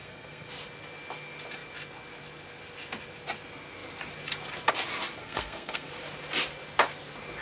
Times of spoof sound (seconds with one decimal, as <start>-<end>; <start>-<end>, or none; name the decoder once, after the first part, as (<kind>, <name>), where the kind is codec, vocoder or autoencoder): 0.0-0.5 (codec, SNAC); 5.2-5.9